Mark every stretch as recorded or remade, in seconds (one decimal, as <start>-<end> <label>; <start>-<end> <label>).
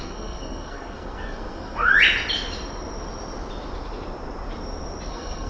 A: 0.0-1.9 remade; 1.9-5.1 recorded; 5.1-5.5 remade